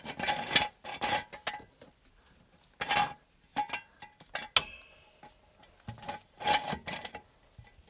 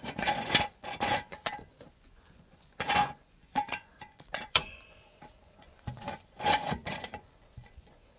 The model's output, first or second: second